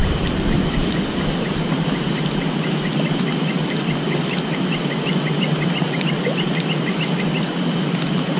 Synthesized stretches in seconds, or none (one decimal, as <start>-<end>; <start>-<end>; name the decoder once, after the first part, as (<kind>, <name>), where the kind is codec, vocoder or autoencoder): none